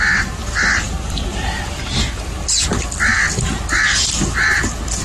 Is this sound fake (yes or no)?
no